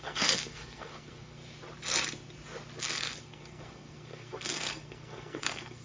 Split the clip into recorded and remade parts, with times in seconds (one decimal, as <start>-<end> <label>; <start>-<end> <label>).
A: 0.0-1.4 remade; 1.4-2.8 recorded; 2.8-5.8 remade

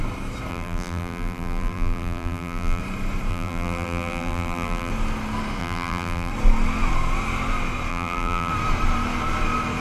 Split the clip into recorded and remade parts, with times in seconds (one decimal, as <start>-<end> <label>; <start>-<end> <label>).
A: 0.0-0.5 recorded; 0.5-2.8 remade; 2.8-3.3 recorded; 3.3-4.9 remade; 4.9-5.6 recorded; 5.6-6.3 remade; 6.3-7.9 recorded; 7.9-8.5 remade; 8.5-9.8 recorded

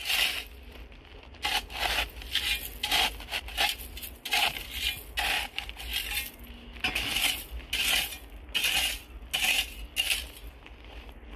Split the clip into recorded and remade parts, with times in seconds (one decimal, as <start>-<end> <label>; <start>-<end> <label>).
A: 0.0-11.4 recorded

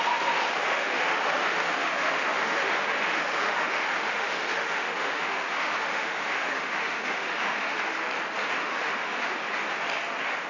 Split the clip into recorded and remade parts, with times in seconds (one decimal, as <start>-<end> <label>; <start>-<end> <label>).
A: 0.0-0.5 recorded; 0.5-2.7 remade; 2.7-3.1 recorded; 3.1-7.8 remade; 7.8-8.6 recorded; 8.6-9.4 remade; 9.4-10.5 recorded

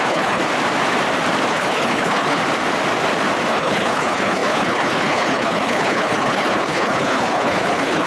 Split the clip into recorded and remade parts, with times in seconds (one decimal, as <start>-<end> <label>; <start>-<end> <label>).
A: 0.0-0.4 remade; 0.4-1.5 recorded; 1.5-2.4 remade; 2.4-3.5 recorded; 3.5-8.1 remade

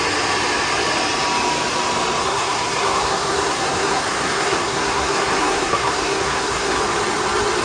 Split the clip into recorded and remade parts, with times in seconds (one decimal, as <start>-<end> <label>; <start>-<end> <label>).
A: 0.0-2.2 recorded; 2.2-6.8 remade; 6.8-7.6 recorded